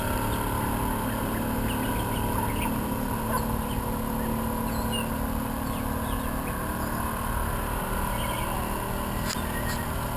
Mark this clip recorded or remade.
recorded